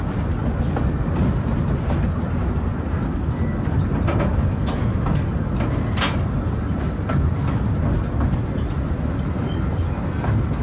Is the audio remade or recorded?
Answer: recorded